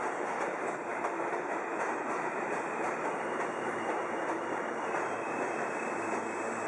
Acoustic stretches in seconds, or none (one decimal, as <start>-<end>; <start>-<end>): none